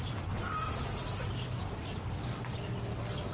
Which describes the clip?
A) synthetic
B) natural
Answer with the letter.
B